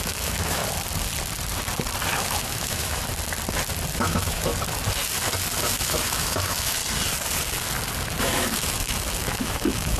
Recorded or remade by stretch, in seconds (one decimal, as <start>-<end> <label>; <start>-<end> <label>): 0.0-0.6 remade; 0.6-2.2 recorded; 2.2-3.0 remade; 3.0-3.9 recorded; 3.9-4.5 remade; 4.5-5.6 recorded; 5.6-6.8 remade; 6.8-8.2 recorded; 8.2-10.0 remade